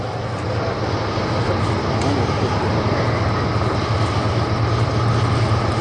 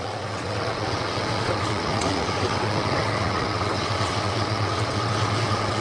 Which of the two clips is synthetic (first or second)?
second